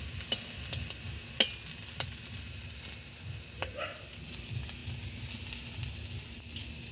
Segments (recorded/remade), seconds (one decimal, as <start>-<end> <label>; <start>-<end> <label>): 0.0-6.9 recorded